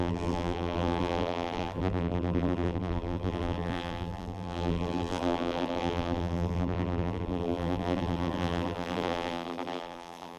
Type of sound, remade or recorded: remade